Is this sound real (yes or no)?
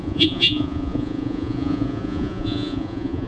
no